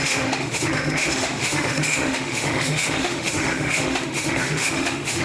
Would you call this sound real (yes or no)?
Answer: no